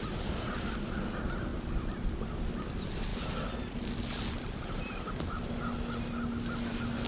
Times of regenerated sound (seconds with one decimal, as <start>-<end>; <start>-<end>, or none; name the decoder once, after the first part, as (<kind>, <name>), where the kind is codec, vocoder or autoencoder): none